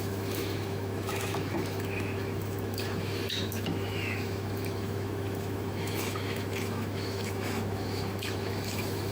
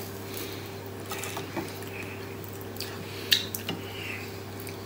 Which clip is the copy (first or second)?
first